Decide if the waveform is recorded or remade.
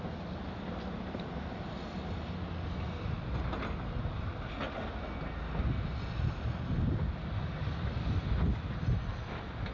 recorded